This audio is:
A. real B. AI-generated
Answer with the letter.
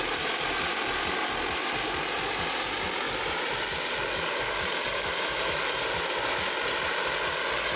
A